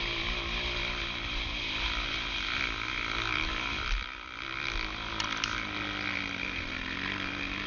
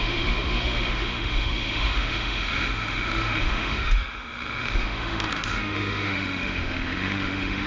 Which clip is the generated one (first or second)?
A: second